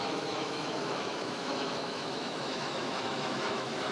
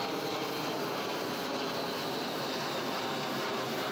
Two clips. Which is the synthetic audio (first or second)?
first